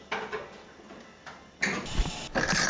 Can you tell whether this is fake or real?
real